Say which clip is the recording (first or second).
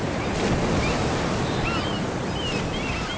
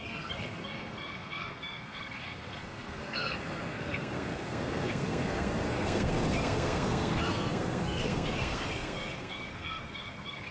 first